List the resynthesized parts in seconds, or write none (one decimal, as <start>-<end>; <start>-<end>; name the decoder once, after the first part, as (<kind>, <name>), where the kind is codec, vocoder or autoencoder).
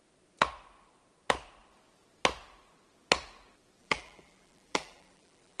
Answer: 3.8-5.6 (vocoder, BigVGAN v2)